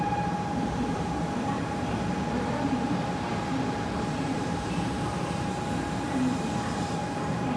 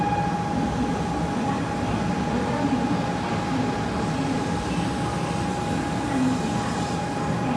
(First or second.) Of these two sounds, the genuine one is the second